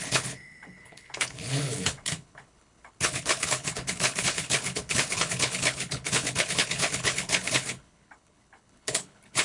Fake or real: fake